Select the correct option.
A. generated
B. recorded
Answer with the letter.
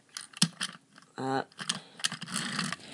B